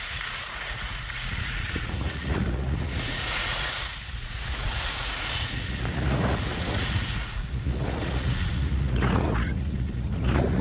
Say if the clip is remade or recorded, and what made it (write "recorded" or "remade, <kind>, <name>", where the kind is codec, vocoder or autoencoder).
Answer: remade, vocoder, Vocos